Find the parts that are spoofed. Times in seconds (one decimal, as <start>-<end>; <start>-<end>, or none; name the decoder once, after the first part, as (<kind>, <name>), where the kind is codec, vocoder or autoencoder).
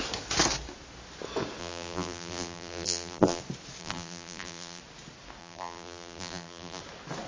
1.6-3.4 (vocoder, BigVGAN v2); 3.8-4.8; 5.4-6.8